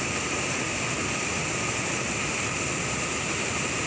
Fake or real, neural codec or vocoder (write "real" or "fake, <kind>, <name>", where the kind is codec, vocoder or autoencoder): fake, vocoder, BigVGAN v2